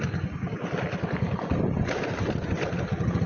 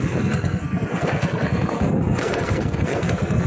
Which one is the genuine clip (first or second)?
first